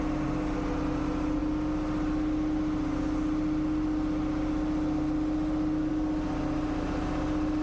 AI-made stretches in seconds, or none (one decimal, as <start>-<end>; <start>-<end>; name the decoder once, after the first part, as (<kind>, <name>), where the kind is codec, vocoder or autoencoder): none